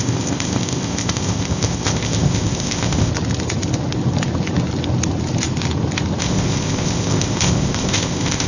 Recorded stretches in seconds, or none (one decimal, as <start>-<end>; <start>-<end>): 3.1-6.2